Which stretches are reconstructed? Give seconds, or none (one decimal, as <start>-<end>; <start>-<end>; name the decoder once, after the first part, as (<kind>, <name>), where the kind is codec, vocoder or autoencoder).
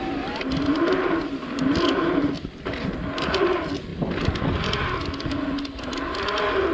none